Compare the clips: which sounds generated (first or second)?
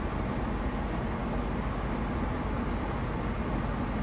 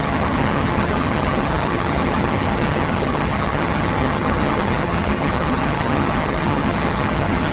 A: second